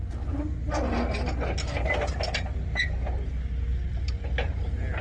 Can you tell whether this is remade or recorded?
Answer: recorded